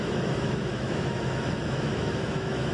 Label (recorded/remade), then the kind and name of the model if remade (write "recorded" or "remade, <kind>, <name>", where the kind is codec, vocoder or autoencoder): remade, autoencoder, DAC-VAE